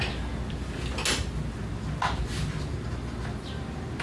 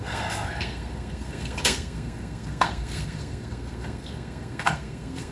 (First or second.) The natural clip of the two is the first